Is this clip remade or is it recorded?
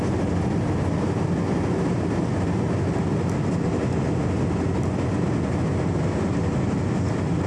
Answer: recorded